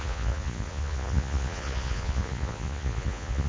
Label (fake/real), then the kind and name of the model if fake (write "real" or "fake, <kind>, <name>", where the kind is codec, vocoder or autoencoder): fake, vocoder, Vocos